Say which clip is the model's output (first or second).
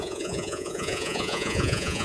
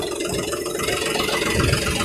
first